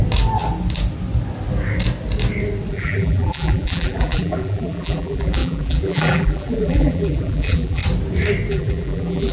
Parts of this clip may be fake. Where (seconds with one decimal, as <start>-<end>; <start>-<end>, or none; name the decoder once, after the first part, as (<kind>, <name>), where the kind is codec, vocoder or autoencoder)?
2.7-7.8 (vocoder, BigVGAN v2); 8.5-9.3